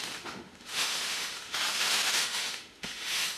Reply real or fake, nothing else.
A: fake